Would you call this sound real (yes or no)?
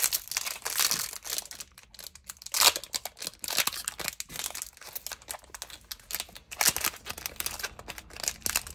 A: yes